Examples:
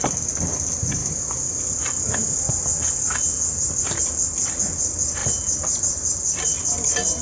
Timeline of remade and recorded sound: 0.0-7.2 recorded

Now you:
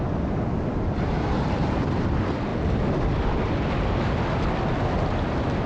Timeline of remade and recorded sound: 0.0-5.7 recorded

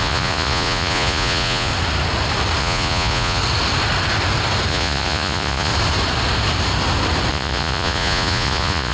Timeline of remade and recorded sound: 0.0-1.7 remade; 1.7-2.6 recorded; 2.6-3.4 remade; 3.4-4.7 recorded; 4.7-5.7 remade; 5.7-7.3 recorded; 7.3-8.9 remade

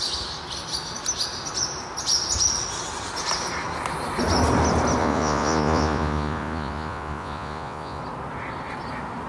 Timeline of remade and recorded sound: 0.0-5.0 recorded; 5.0-8.0 remade; 8.0-9.3 recorded